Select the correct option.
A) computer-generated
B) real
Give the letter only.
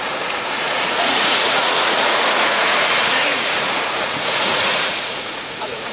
A